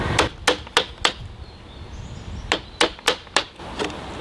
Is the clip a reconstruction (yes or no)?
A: no